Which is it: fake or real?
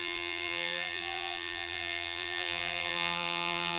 fake